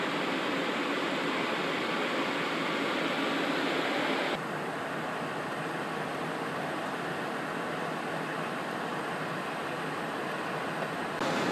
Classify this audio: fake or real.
real